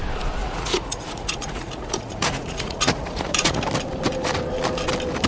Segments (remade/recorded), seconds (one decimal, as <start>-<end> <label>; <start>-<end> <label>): 0.0-0.4 recorded; 0.4-3.6 remade; 3.6-5.3 recorded